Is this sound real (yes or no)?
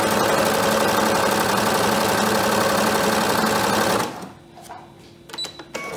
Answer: yes